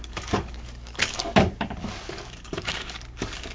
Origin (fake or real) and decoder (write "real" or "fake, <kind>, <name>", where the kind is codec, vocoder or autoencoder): fake, codec, DAC